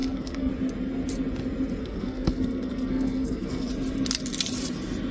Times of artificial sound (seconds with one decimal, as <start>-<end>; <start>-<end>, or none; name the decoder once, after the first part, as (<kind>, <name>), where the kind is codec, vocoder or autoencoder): 0.0-0.5 (codec, SNAC); 1.8-3.7